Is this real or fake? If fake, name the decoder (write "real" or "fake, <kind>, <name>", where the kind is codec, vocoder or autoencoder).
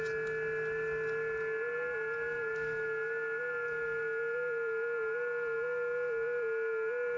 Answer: real